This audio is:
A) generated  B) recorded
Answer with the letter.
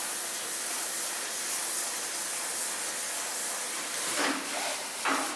B